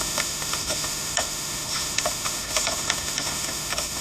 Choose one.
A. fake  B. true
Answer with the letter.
A